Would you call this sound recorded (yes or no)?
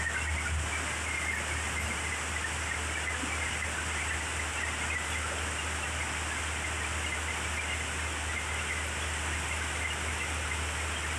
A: yes